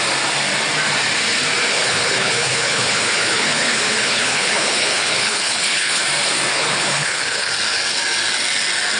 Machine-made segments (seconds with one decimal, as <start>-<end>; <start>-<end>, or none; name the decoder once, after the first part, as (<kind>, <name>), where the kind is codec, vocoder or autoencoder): 1.7-6.0 (codec, HILCodec); 6.5-7.5